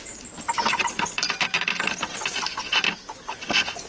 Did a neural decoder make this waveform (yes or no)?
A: no